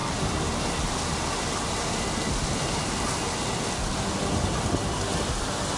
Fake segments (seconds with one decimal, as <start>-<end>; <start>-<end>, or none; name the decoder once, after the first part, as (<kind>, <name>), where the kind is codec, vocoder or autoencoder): none